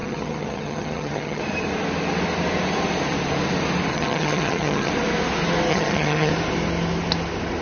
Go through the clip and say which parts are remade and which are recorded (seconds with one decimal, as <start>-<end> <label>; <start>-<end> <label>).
0.0-1.4 remade; 1.4-3.9 recorded; 3.9-4.9 remade; 4.9-5.7 recorded; 5.7-6.3 remade; 6.3-7.6 recorded